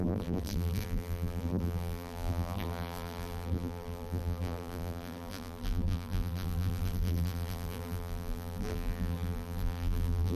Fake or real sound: fake